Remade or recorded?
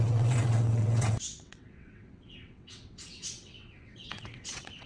remade